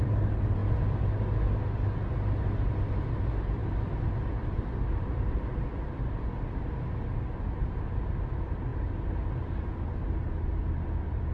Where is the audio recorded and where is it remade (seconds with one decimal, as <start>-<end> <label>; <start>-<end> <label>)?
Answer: 0.0-11.3 recorded